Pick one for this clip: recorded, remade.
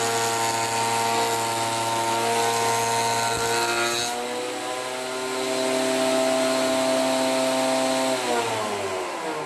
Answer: recorded